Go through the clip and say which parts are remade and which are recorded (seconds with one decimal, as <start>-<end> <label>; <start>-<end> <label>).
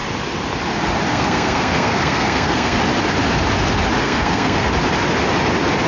0.0-1.1 recorded; 1.1-2.8 remade; 2.8-4.0 recorded; 4.0-4.7 remade; 4.7-5.9 recorded